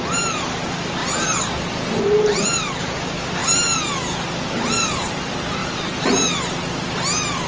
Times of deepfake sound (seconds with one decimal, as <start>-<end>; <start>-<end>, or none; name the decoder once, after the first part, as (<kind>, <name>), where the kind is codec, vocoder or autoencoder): none